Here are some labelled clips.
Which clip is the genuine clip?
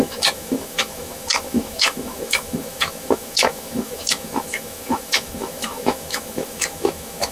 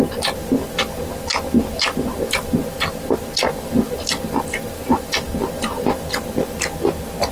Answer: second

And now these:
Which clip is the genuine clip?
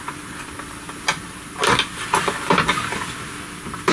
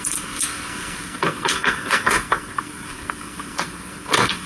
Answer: first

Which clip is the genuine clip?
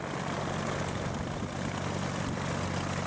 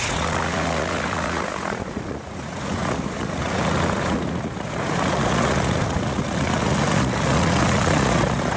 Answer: first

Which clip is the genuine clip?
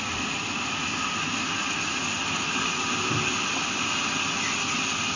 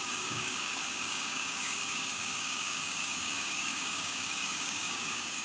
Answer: first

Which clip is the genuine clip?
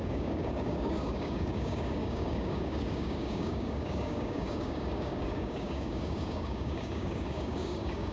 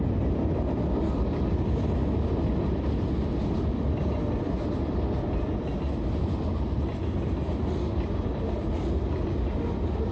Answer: second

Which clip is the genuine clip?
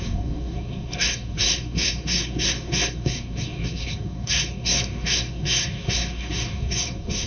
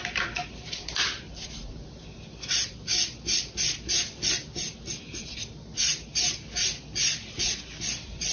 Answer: second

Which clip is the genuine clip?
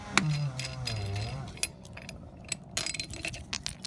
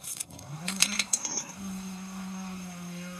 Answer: first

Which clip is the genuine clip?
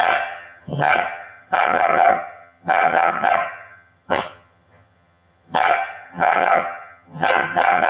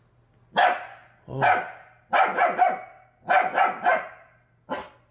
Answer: second